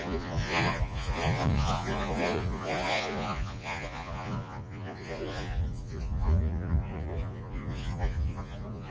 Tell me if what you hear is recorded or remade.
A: remade